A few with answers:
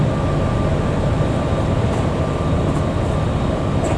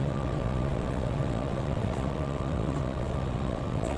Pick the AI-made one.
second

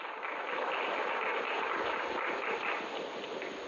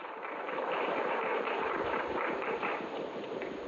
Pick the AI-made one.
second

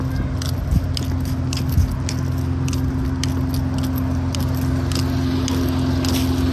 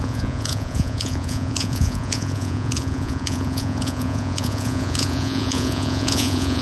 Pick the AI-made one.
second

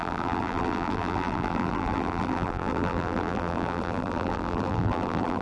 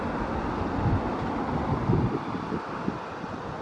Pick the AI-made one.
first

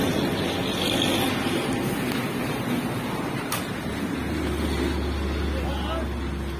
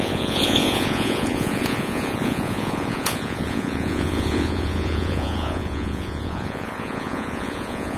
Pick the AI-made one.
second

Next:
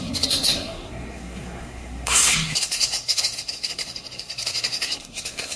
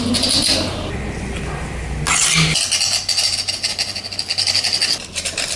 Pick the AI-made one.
first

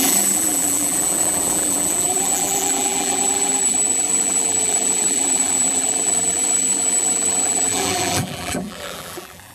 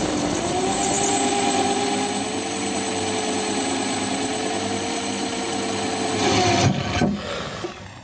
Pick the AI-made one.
first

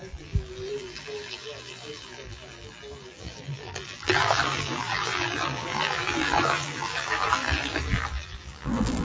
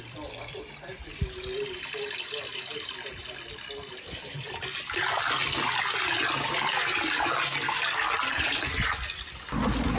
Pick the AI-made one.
first